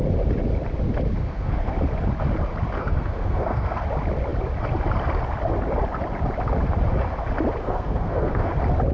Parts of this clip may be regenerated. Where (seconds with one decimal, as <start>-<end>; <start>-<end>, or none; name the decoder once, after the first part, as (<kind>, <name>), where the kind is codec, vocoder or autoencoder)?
1.2-1.7 (codec, SNAC); 2.8-3.8; 7.6-8.5